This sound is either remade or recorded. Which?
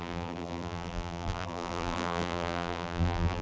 remade